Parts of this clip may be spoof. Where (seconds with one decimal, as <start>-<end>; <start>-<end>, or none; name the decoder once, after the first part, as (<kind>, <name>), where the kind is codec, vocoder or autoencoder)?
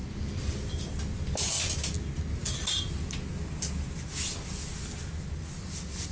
none